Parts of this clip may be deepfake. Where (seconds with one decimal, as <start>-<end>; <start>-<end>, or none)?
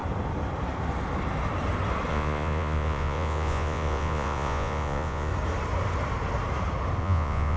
2.1-5.3; 7.0-7.6